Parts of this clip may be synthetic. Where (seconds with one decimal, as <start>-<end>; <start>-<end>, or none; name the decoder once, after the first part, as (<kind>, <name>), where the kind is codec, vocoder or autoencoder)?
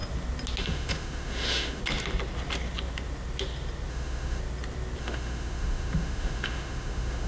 0.6-1.8 (autoencoder, DAC-VAE); 3.9-4.4; 5.0-7.3